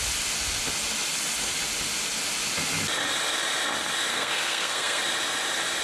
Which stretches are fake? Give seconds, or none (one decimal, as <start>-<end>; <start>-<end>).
4.1-5.0